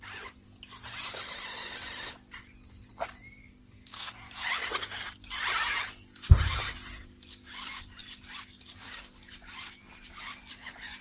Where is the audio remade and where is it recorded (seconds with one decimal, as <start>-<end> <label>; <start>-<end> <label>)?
0.0-3.4 recorded; 3.4-4.1 remade; 4.1-11.0 recorded